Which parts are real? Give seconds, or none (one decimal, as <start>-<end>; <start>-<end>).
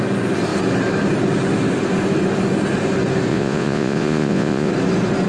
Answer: 0.0-3.3; 4.7-5.3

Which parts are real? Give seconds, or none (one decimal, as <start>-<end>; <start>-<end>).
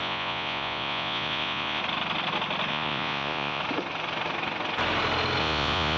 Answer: 1.8-2.7; 3.6-5.4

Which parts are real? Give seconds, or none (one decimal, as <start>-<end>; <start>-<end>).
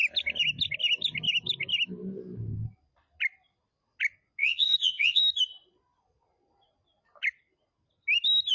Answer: 0.0-4.4; 5.2-8.5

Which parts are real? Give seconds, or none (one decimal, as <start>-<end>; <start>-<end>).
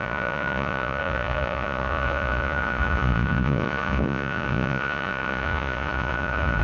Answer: none